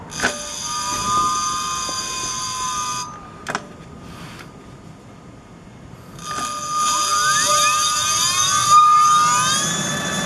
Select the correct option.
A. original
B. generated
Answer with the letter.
A